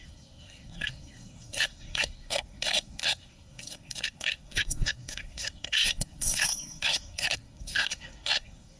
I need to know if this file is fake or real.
fake